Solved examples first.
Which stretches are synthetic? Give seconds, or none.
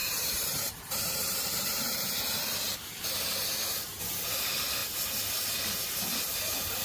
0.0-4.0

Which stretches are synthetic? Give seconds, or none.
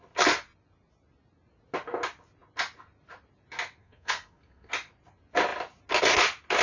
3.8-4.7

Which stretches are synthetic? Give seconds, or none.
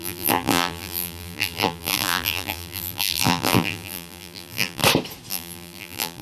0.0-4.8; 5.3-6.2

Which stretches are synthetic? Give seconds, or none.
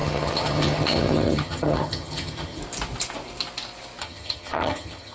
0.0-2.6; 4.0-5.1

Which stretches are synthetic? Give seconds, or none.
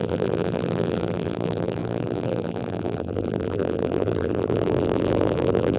0.0-5.8